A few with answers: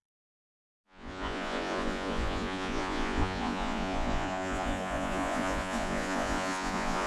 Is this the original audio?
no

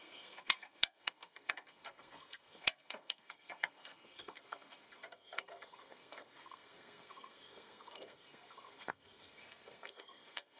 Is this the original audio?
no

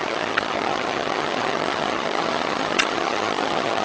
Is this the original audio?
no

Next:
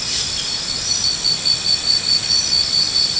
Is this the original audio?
yes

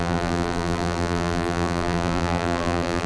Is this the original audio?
no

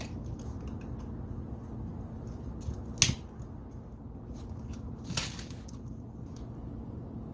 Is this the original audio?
yes